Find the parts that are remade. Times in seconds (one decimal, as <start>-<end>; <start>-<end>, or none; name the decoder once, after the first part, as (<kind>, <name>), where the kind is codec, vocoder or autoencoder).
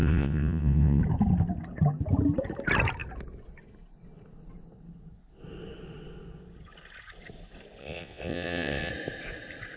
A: 0.0-1.0 (vocoder, WaveNeXt); 7.8-8.9